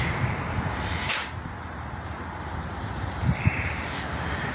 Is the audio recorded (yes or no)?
no